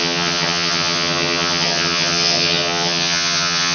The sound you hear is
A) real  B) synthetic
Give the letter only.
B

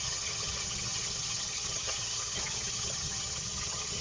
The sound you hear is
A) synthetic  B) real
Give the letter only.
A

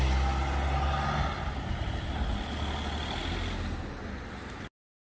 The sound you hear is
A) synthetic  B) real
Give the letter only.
B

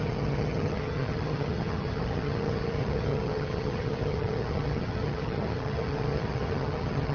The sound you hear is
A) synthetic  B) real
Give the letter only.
A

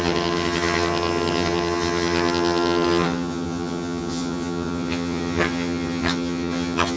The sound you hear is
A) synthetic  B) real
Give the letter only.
A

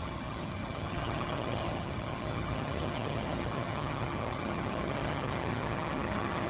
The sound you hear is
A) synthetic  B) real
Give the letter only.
A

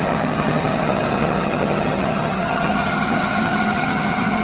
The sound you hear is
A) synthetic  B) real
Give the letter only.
A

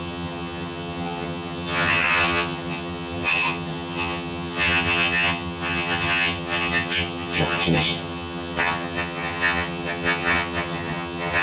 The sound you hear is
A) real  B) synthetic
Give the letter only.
B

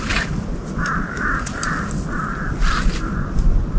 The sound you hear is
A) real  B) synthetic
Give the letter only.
A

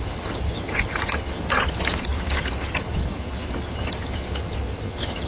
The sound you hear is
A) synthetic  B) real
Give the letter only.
A